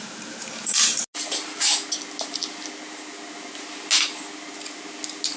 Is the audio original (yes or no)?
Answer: yes